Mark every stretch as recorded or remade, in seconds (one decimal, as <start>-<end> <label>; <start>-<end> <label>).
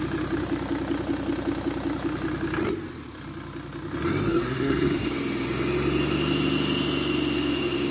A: 0.0-4.3 recorded; 4.3-5.1 remade; 5.1-7.9 recorded